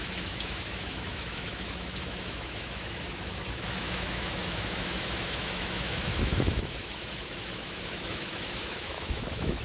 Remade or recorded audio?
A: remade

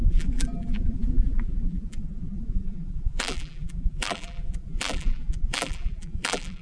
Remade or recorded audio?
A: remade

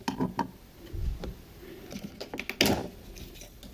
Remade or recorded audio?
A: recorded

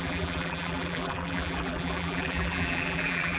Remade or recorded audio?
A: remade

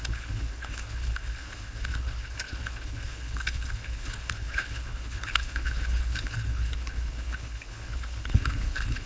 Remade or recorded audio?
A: remade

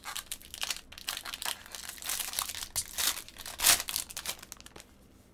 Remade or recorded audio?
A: recorded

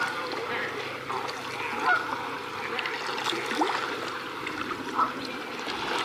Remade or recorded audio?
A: recorded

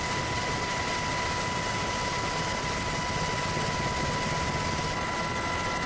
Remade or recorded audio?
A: recorded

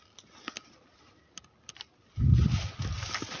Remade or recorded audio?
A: recorded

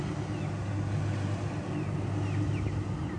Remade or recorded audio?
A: recorded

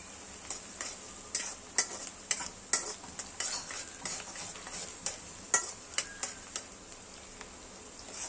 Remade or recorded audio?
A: recorded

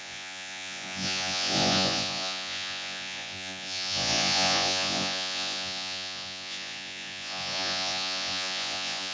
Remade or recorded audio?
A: remade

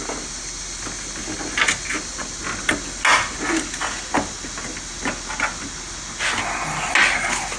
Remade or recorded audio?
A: recorded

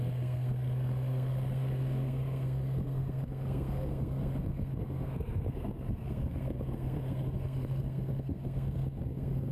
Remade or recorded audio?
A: remade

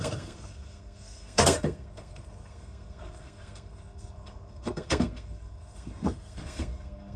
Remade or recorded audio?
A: remade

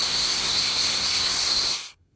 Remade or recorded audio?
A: remade